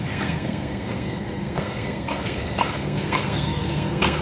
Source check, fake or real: fake